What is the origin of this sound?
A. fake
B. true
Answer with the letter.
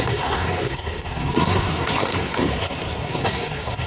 A